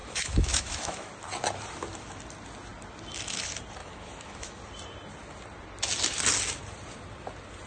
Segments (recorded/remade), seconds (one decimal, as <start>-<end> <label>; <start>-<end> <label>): 0.0-1.1 remade; 1.1-3.8 recorded; 3.8-4.6 remade; 4.6-7.7 recorded